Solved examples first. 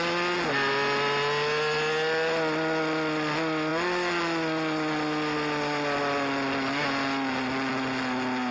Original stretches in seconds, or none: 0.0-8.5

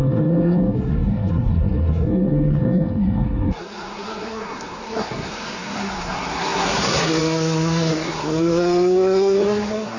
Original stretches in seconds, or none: none

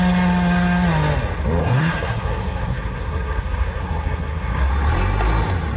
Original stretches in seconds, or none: 0.0-1.6; 4.7-5.8

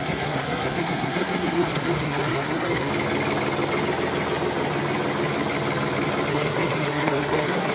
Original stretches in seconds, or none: 2.9-6.3